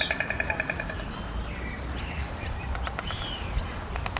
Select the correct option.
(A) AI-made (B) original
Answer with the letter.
B